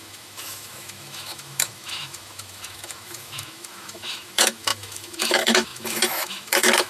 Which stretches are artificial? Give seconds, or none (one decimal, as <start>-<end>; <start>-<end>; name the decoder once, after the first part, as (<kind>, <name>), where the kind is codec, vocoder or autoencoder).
0.0-6.9 (autoencoder, DAC-VAE)